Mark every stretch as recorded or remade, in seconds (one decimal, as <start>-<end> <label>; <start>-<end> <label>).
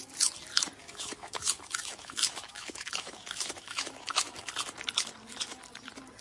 0.0-0.8 recorded; 0.8-4.5 remade; 4.5-6.2 recorded